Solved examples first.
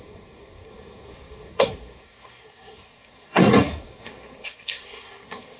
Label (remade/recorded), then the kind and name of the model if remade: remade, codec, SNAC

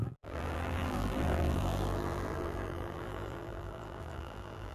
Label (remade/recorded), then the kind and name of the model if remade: remade, vocoder, BigVGAN v2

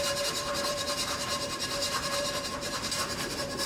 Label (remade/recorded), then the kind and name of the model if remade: remade, vocoder, BigVGAN v2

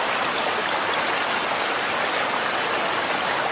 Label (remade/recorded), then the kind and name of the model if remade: recorded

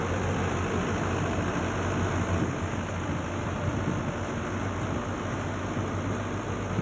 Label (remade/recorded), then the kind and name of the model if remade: recorded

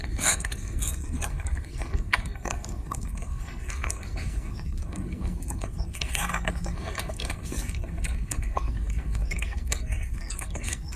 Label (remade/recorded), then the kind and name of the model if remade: remade, codec, SNAC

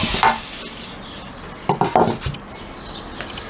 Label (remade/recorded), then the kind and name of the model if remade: recorded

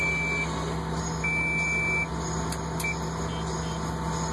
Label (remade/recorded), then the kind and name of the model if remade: recorded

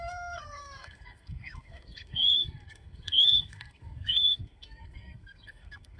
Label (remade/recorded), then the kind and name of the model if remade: remade, codec, SNAC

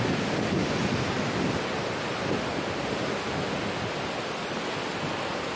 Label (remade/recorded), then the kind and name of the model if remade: recorded